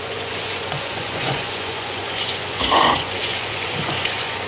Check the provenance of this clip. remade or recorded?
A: remade